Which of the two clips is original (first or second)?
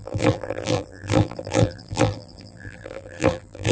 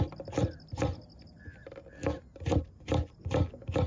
second